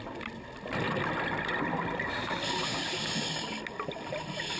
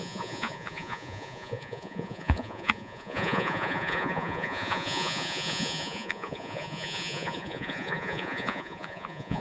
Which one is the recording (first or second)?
first